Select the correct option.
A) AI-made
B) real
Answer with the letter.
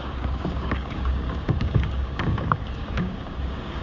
A